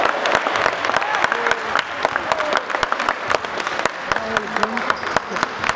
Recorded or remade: recorded